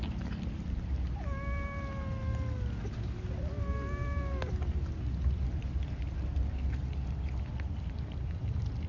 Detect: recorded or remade recorded